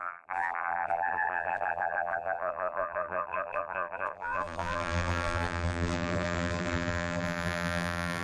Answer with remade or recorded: remade